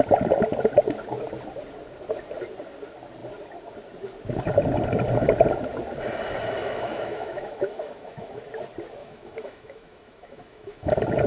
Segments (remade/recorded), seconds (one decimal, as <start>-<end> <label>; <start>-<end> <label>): 0.0-6.6 recorded; 6.6-8.4 remade; 8.4-9.0 recorded; 9.0-10.9 remade; 10.9-11.3 recorded